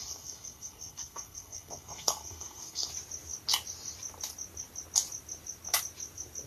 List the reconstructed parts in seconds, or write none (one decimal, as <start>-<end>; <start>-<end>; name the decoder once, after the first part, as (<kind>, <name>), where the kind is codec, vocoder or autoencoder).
0.0-2.9 (codec, SNAC)